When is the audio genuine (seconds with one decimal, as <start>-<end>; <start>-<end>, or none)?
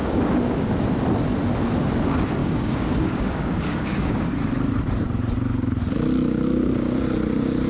0.7-2.4; 4.3-7.7